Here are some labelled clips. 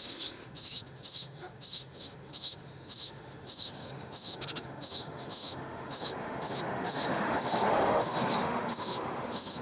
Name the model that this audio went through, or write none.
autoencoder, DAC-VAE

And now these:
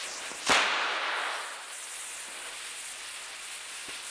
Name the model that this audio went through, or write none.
none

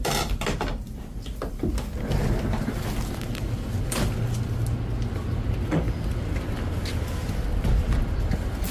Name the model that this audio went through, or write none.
none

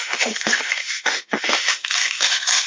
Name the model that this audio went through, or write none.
autoencoder, DAC-VAE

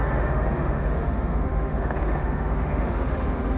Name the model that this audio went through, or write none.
autoencoder, DAC-VAE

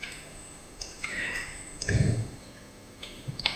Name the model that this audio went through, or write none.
autoencoder, DAC-VAE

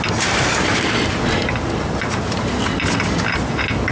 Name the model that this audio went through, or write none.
none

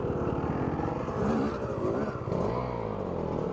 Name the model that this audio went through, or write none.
none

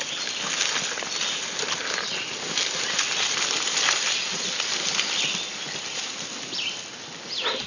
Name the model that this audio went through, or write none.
none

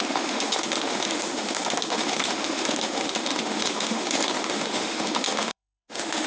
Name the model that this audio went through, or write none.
autoencoder, DAC-VAE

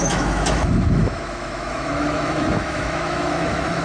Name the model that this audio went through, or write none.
autoencoder, DAC-VAE